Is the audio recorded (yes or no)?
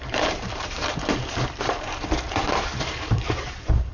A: no